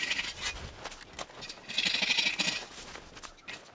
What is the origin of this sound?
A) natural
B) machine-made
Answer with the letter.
A